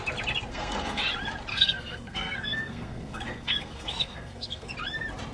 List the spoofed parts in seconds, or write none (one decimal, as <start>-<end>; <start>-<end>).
0.5-1.0; 1.5-4.7